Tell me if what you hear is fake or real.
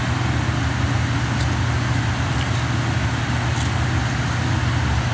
real